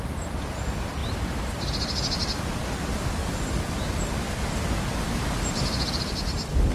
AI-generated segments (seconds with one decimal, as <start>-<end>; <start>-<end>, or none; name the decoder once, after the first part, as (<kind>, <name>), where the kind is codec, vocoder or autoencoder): 0.0-1.0 (vocoder, BigVGAN v2); 2.8-3.2; 5.4-6.7